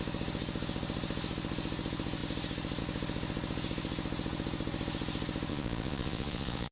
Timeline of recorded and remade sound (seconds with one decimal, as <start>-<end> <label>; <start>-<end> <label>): 0.0-5.5 recorded; 5.5-6.7 remade